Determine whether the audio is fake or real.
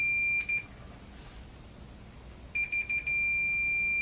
real